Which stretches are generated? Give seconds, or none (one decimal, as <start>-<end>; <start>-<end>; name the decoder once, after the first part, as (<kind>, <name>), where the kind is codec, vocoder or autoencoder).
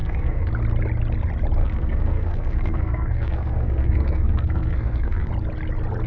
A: 0.0-0.5 (codec, SNAC); 1.6-5.3